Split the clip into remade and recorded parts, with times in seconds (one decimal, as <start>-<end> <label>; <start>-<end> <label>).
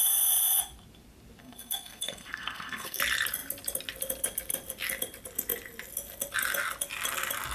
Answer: 0.0-1.4 recorded; 1.4-3.0 remade; 3.0-7.5 recorded